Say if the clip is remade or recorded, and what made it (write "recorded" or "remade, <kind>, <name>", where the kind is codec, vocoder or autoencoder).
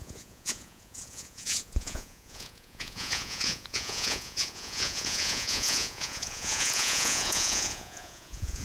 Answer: remade, vocoder, Vocos